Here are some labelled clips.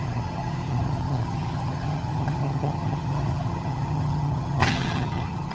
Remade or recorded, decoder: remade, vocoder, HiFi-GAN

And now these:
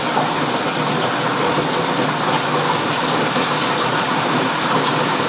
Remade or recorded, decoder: recorded